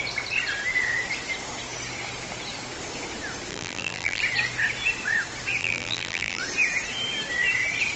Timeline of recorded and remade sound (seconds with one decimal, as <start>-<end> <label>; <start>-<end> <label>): 0.0-3.5 recorded; 3.5-4.2 remade; 4.2-5.6 recorded; 5.6-6.4 remade; 6.4-8.0 recorded